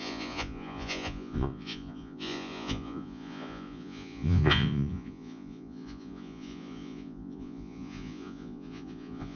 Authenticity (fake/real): fake